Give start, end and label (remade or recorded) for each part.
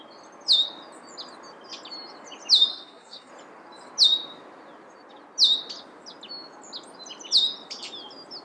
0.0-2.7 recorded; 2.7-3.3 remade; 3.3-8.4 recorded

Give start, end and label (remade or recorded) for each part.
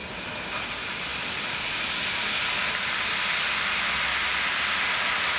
0.0-5.4 recorded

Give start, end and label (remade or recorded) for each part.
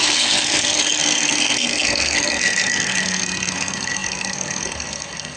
0.0-5.4 remade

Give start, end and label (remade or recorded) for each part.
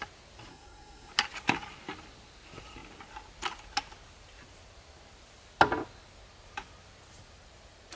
0.0-0.5 recorded; 0.5-1.1 remade; 1.1-8.0 recorded